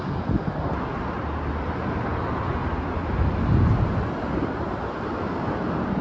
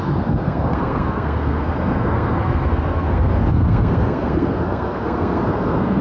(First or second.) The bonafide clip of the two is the first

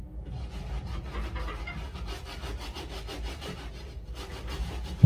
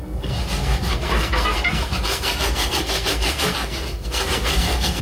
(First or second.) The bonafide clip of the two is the first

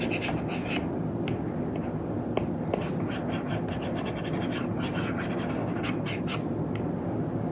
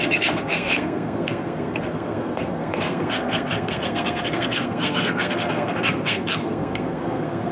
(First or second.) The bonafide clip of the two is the first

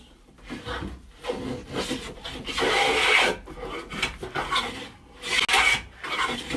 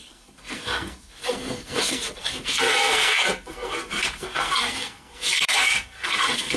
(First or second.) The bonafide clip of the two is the first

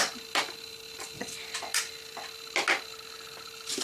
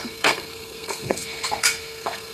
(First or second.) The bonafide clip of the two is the first